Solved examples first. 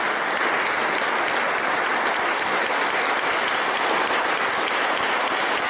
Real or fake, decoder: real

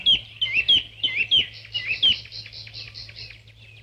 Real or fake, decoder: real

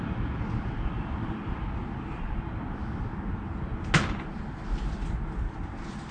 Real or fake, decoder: real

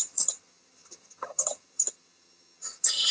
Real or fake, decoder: fake, vocoder, HiFi-GAN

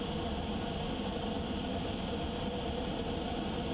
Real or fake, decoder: real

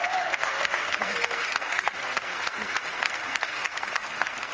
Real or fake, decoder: fake, codec, SNAC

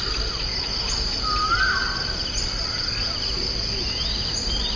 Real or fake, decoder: real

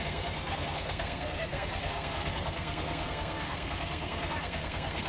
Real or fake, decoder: fake, codec, SNAC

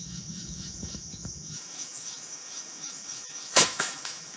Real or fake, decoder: fake, autoencoder, DAC-VAE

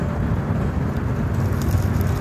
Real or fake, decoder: real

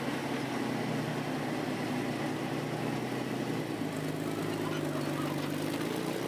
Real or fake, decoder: real